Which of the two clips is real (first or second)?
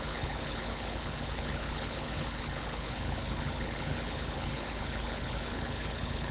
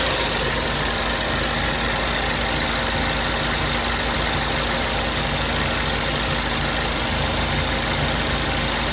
second